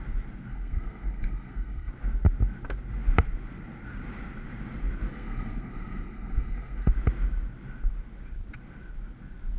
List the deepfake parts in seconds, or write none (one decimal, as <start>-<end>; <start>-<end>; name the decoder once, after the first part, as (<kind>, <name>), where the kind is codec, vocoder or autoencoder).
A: 0.5-1.9 (codec, SNAC); 5.1-6.9